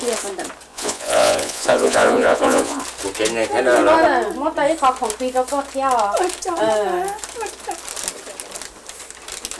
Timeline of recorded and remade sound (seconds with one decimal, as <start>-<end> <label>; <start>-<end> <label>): 0.0-0.7 recorded; 0.7-2.8 remade; 2.8-9.6 recorded